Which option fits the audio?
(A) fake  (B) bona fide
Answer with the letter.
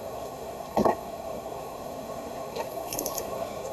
A